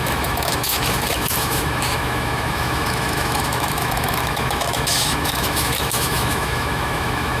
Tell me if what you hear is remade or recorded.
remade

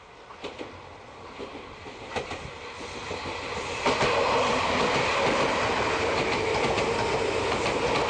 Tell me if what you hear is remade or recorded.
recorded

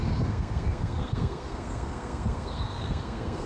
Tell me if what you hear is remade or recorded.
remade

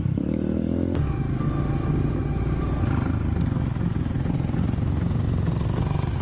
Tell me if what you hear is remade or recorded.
recorded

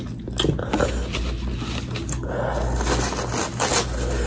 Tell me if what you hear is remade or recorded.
recorded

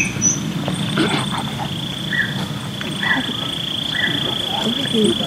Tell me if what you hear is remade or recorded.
recorded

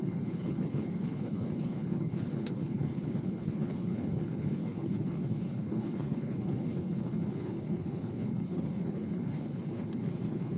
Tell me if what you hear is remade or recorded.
remade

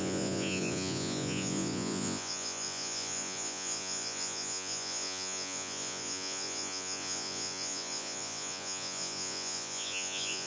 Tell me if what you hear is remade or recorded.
remade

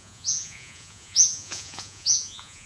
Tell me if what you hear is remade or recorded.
remade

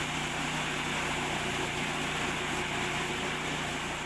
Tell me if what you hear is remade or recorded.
recorded